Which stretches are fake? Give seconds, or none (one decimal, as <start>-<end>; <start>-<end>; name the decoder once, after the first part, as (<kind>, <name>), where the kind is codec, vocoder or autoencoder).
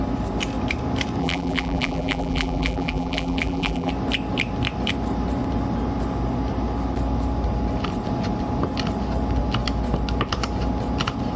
1.2-3.9 (vocoder, BigVGAN v2)